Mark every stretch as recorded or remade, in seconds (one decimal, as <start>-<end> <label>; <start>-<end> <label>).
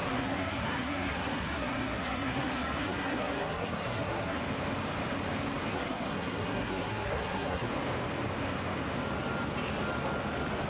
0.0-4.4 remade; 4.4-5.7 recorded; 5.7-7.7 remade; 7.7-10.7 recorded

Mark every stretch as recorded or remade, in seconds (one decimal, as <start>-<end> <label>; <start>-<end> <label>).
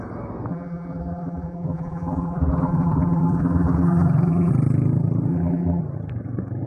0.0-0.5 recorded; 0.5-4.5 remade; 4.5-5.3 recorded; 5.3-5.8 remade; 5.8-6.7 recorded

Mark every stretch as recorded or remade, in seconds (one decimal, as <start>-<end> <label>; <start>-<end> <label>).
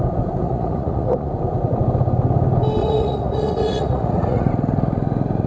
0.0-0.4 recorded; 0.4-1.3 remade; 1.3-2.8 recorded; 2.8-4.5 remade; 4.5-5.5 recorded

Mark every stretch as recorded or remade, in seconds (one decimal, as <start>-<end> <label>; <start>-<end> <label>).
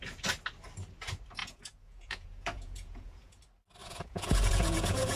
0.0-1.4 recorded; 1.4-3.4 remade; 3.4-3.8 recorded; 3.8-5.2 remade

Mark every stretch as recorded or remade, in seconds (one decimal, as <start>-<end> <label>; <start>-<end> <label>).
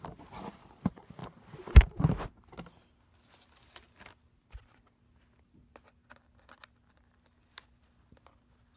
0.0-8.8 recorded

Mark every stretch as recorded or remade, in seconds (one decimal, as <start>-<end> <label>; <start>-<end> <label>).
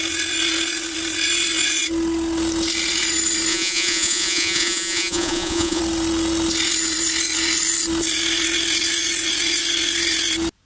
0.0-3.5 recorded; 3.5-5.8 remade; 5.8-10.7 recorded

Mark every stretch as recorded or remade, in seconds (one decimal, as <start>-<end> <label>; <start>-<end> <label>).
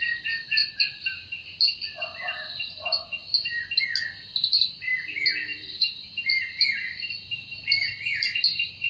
0.0-0.6 recorded; 0.6-1.2 remade; 1.2-5.5 recorded; 5.5-8.9 remade